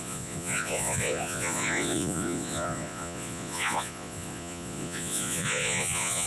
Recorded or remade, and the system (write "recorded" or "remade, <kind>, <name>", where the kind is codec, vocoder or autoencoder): remade, vocoder, Vocos